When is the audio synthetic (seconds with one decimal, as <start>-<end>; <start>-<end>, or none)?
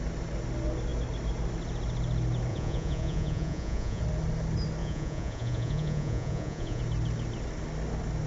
2.5-4.0; 4.8-6.8